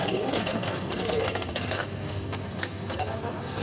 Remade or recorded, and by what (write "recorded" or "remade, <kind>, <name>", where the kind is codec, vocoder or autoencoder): remade, codec, SNAC